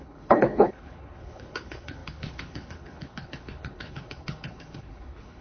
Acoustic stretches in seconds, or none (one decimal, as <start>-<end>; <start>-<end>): none